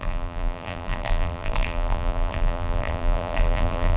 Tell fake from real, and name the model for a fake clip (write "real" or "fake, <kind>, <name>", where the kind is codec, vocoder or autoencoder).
fake, vocoder, BigVGAN v2